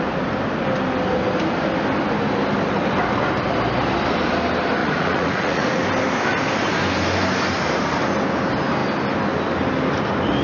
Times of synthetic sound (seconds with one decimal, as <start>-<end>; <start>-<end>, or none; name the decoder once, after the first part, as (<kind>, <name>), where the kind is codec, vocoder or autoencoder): 4.8-5.8 (vocoder, Vocos)